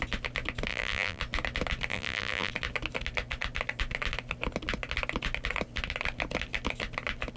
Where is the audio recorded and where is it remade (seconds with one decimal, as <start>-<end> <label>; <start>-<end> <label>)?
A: 0.0-0.7 recorded; 0.7-1.2 remade; 1.2-1.9 recorded; 1.9-2.5 remade; 2.5-7.4 recorded